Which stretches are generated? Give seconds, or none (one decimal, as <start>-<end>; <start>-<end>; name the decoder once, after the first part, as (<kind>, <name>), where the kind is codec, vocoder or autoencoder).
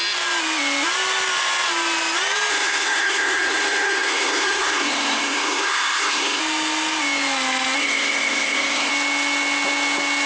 2.5-6.4 (codec, SNAC); 7.8-8.9